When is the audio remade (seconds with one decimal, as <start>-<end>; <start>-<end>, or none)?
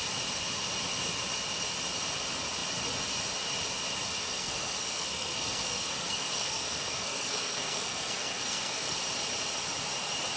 4.3-9.0